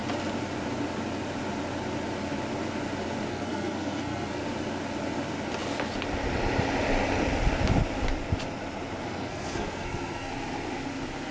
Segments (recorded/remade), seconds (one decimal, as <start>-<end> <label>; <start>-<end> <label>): 0.0-3.3 recorded; 3.3-4.4 remade; 4.4-9.0 recorded; 9.0-10.3 remade; 10.3-11.3 recorded